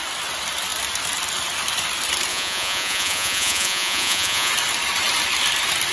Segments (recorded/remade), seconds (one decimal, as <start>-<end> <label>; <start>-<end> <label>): 0.0-2.3 recorded; 2.3-4.5 remade; 4.5-5.9 recorded